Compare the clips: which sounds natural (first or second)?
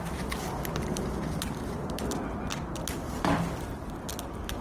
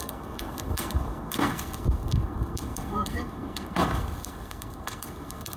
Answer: first